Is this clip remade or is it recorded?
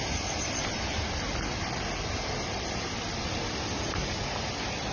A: recorded